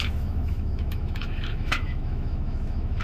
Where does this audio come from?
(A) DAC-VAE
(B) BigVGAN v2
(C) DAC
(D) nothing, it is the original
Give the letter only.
A